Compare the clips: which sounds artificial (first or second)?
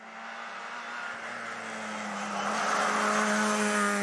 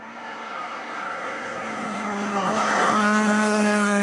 second